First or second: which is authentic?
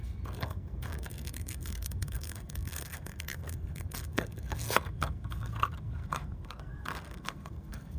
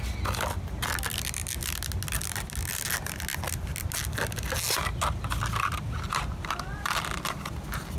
second